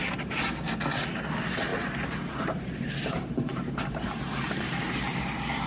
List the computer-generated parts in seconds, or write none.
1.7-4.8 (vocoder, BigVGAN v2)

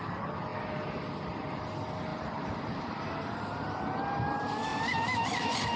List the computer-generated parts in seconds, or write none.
2.1-3.8 (vocoder, BigVGAN v2); 4.7-5.2

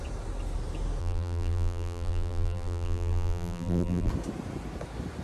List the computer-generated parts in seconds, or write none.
1.0-4.1 (vocoder, BigVGAN v2)

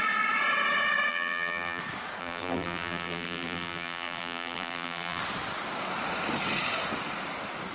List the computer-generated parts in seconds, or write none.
1.1-1.8 (vocoder, BigVGAN v2); 2.2-5.2

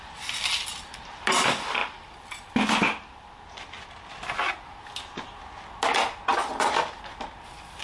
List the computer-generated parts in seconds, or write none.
none

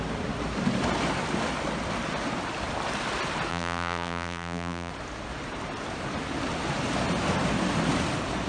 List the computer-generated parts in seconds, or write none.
3.5-4.9 (vocoder, BigVGAN v2)